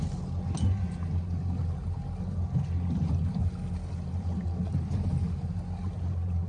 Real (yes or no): yes